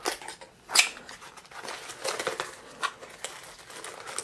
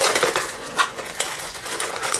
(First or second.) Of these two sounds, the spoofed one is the second